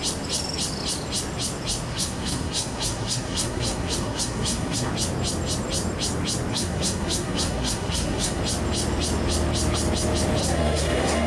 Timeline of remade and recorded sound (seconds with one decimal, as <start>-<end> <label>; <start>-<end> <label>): 0.0-1.9 recorded; 1.9-4.9 remade; 4.9-6.5 recorded; 6.5-8.4 remade; 8.4-10.4 recorded; 10.4-11.3 remade